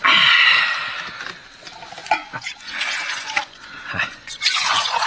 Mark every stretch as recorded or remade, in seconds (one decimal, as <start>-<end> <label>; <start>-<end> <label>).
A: 0.0-2.0 recorded; 2.0-5.1 remade